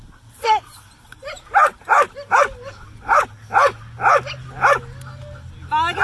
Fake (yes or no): no